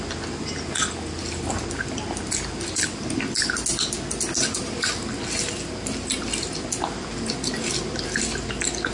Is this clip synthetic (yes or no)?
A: no